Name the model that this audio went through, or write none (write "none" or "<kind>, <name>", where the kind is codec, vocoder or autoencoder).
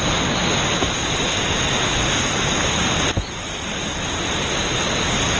none